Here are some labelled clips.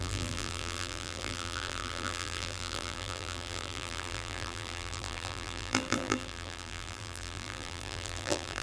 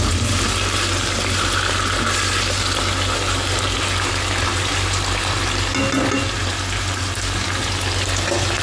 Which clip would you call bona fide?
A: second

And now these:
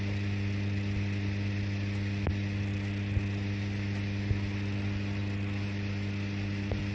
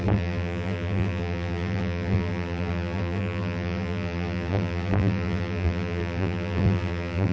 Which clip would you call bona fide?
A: first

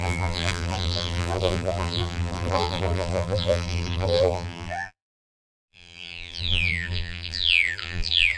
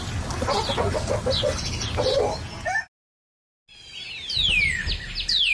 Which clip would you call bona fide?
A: second